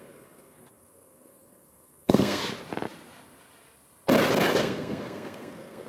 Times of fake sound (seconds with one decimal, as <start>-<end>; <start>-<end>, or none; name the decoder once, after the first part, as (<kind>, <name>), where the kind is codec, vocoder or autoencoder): 0.0-2.4 (codec, SNAC); 4.6-5.9